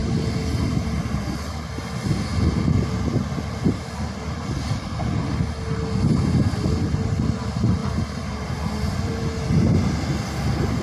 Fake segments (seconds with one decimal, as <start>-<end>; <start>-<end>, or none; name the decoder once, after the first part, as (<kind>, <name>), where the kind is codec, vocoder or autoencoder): 7.8-9.2 (vocoder, BigVGAN v2)